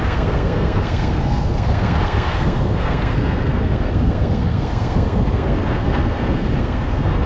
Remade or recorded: remade